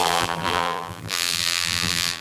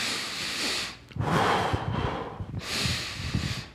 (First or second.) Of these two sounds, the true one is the second